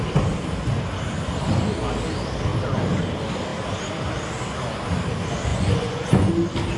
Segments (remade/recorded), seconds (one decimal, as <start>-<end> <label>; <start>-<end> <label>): 0.0-5.5 recorded; 5.5-6.3 remade; 6.3-6.8 recorded